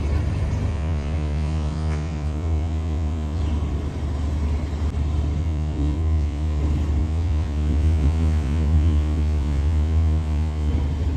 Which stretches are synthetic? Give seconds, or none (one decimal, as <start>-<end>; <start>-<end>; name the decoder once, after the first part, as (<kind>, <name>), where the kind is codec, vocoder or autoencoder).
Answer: 0.7-3.4 (vocoder, Vocos); 5.4-6.6; 7.0-10.7